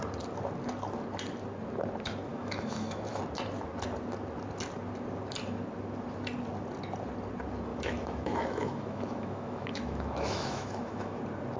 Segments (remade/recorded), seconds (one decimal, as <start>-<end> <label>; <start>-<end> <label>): 0.0-2.3 recorded; 2.3-3.2 remade; 3.2-7.7 recorded; 7.7-11.2 remade; 11.2-11.6 recorded